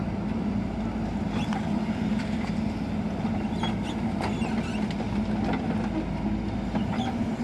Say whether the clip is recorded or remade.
recorded